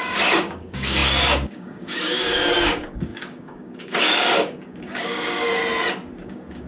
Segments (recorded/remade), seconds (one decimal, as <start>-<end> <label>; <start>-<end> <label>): 0.0-5.6 remade; 5.6-6.1 recorded; 6.1-6.7 remade